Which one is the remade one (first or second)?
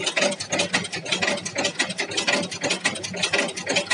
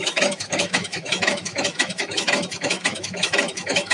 second